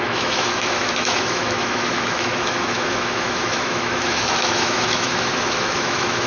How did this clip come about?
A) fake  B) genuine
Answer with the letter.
A